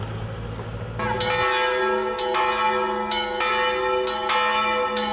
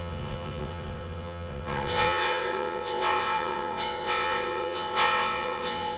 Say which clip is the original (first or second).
first